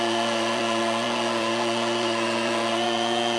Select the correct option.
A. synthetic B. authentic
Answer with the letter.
A